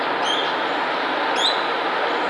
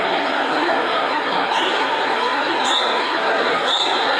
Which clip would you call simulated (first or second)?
second